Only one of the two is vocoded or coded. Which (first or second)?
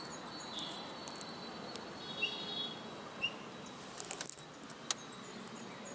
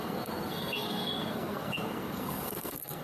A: second